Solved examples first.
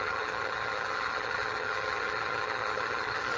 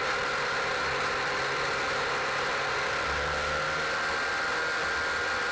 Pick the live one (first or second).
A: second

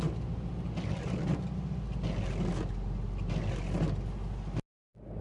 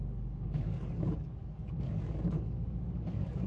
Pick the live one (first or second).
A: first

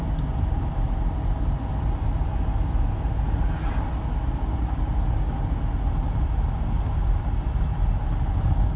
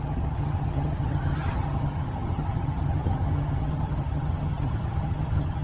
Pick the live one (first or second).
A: first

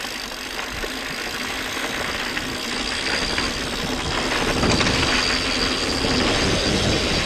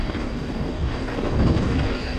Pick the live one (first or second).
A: first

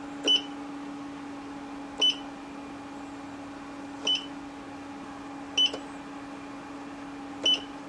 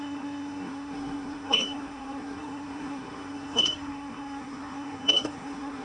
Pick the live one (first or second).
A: first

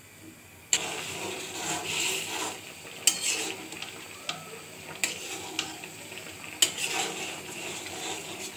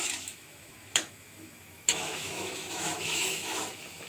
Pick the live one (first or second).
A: first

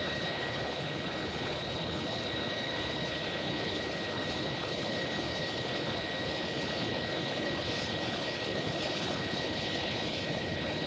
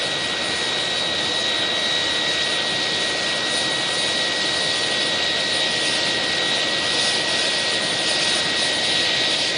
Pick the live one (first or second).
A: second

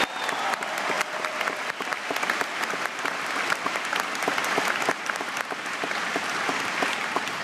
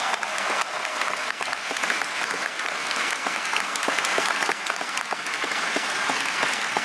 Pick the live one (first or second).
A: first